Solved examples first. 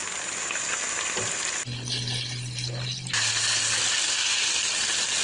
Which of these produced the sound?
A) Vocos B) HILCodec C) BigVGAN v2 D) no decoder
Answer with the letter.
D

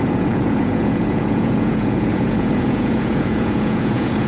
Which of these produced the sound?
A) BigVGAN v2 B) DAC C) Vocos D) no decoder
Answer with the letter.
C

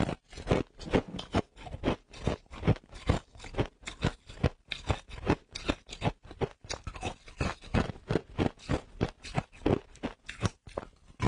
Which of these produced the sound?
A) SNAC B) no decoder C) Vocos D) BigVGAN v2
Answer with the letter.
B